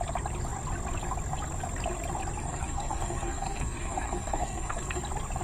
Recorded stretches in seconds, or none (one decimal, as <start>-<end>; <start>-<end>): 0.0-2.4; 5.0-5.4